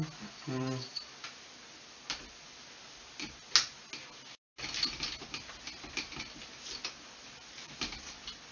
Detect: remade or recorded recorded